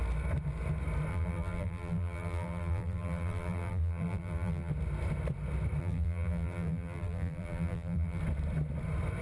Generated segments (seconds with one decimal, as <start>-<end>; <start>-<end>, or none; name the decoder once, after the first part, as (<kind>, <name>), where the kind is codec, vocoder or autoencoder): 1.1-4.7 (vocoder, BigVGAN v2); 5.8-8.2